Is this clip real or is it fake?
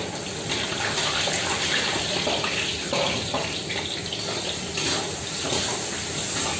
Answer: real